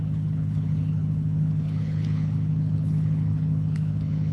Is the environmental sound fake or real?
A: fake